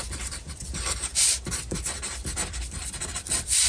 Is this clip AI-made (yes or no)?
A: yes